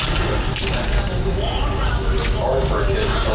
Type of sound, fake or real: real